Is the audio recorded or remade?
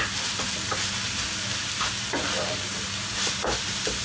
recorded